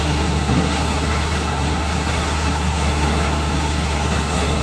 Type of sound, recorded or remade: remade